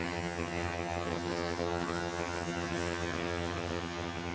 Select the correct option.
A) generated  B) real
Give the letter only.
A